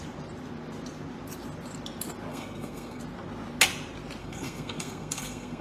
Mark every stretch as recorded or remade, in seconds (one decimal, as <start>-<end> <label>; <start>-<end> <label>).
0.0-2.3 recorded; 2.3-3.0 remade; 3.0-4.2 recorded; 4.2-5.6 remade